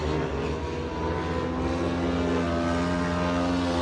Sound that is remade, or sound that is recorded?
recorded